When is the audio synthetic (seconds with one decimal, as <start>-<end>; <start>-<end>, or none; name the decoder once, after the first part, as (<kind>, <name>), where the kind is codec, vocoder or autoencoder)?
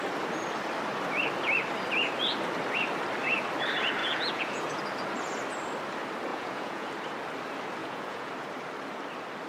4.0-4.8 (vocoder, Vocos); 6.3-6.9; 7.8-8.3